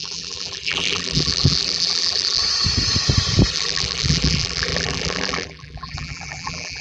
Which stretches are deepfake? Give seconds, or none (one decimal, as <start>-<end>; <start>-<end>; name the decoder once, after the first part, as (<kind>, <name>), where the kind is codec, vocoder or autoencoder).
0.0-2.4 (vocoder, BigVGAN v2); 3.5-6.8